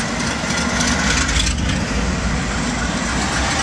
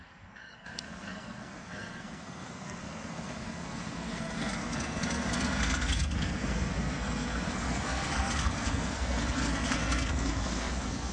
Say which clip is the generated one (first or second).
second